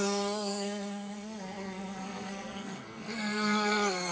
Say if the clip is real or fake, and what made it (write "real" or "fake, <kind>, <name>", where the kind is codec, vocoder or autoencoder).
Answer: fake, codec, SNAC